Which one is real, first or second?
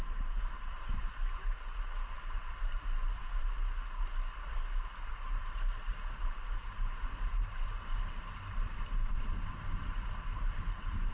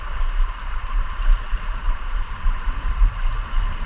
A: first